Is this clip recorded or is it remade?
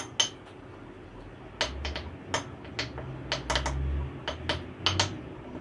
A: recorded